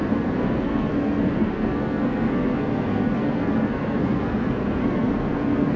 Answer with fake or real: fake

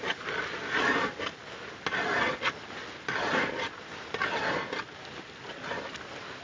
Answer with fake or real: real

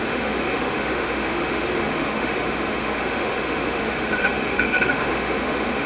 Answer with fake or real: fake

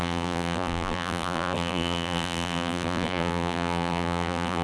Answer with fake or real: fake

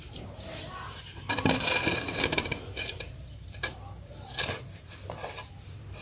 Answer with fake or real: fake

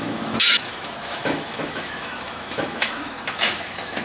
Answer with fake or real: fake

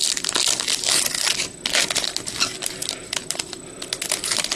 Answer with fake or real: real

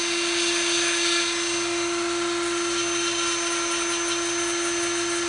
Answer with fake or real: real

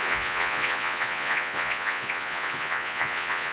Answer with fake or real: fake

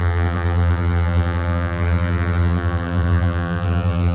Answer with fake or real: fake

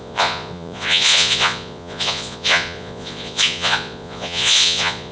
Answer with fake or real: fake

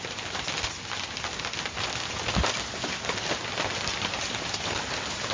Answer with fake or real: real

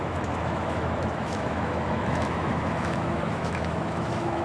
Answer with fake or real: fake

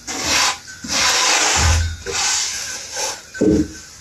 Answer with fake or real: real